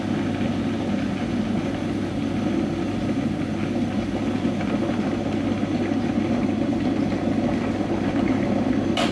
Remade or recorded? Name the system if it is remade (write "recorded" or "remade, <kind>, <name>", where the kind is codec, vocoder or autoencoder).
recorded